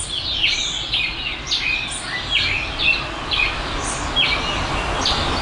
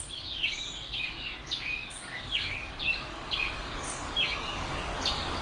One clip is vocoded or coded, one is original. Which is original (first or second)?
first